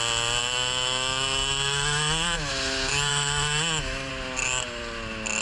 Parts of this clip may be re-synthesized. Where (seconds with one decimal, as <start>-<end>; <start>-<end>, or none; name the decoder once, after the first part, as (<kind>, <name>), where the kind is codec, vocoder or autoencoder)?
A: 0.4-2.5 (autoencoder, DAC-VAE); 3.1-4.1

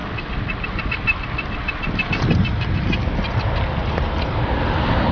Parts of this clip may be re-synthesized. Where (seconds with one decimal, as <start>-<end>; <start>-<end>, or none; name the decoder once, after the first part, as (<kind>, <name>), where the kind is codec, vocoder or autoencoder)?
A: none